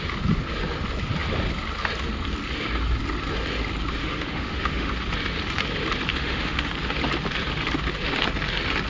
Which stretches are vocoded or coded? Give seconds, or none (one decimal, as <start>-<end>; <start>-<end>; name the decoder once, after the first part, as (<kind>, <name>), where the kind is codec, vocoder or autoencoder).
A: 4.0-4.9 (autoencoder, DAC-VAE); 6.1-6.7